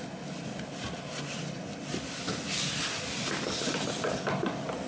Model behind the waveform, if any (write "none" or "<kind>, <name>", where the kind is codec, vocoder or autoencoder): none